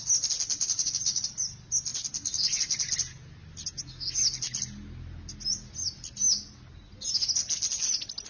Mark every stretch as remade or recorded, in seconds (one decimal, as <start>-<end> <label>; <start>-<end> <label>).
0.0-8.3 recorded